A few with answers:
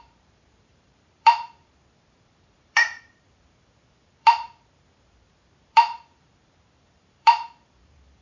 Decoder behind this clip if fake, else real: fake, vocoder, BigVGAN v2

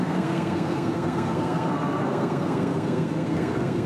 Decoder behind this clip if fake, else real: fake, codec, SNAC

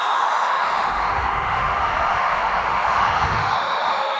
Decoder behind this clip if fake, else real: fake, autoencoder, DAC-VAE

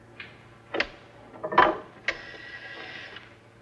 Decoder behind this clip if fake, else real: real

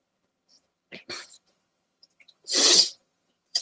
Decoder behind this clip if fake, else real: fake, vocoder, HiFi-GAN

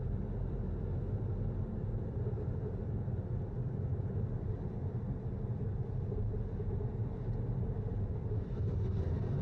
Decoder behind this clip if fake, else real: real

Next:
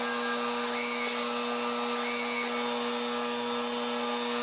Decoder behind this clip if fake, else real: real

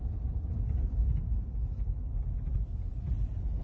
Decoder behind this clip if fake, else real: fake, vocoder, BigVGAN v2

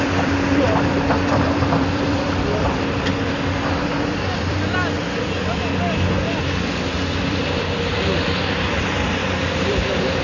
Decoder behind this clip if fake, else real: fake, vocoder, BigVGAN v2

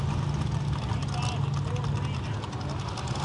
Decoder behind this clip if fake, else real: real